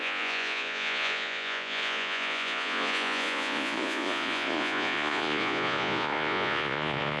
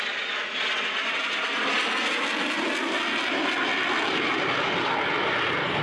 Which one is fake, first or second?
first